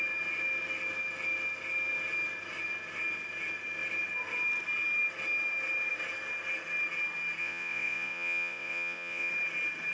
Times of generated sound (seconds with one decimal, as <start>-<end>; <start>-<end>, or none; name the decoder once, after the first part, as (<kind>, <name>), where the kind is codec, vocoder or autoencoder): 7.4-9.3 (vocoder, Vocos)